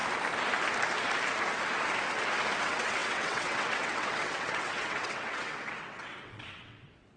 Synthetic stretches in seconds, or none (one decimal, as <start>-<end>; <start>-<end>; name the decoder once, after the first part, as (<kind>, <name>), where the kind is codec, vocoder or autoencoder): 2.6-7.2 (vocoder, WaveNeXt)